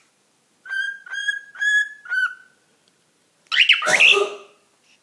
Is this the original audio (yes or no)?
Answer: yes